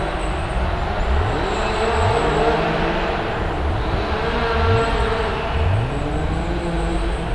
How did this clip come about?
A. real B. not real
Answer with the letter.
A